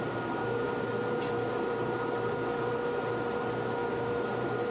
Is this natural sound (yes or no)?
no